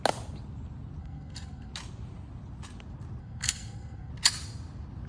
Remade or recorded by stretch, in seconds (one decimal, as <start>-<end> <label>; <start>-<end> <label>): 0.0-1.0 recorded; 1.0-1.7 remade; 1.7-3.2 recorded; 3.2-4.1 remade; 4.1-5.1 recorded